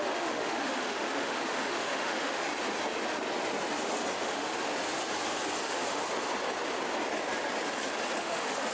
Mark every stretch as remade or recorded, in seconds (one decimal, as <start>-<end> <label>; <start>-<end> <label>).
0.0-2.5 remade; 2.5-4.2 recorded; 4.2-4.7 remade; 4.7-5.6 recorded; 5.6-6.0 remade; 6.0-8.2 recorded; 8.2-8.7 remade